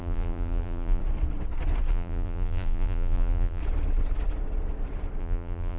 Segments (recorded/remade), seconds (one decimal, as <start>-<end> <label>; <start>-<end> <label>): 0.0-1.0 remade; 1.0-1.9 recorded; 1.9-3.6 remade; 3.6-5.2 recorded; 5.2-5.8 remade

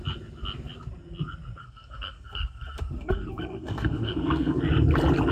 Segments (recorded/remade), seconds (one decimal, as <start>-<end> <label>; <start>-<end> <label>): 0.0-1.6 recorded; 1.6-4.6 remade; 4.6-5.3 recorded

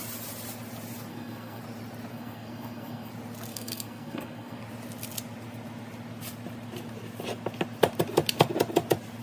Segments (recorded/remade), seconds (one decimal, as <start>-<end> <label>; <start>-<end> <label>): 0.0-1.1 recorded; 1.1-1.6 remade; 1.6-2.1 recorded; 2.1-3.1 remade; 3.1-3.5 recorded; 3.5-4.6 remade; 4.6-9.2 recorded

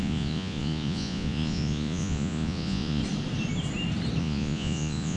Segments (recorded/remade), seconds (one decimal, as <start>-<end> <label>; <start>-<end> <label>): 0.0-3.0 remade; 3.0-4.2 recorded; 4.2-5.2 remade